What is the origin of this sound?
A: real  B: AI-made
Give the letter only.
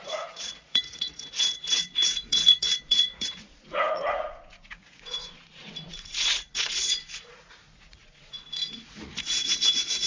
B